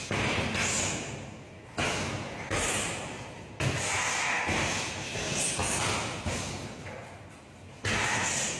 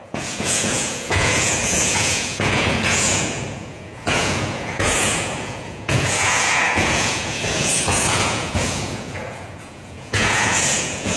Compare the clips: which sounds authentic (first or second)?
first